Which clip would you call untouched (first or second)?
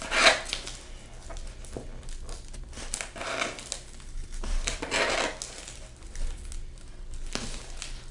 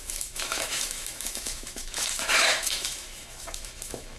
first